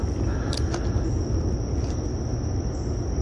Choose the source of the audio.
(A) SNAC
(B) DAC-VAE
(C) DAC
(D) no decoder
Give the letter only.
D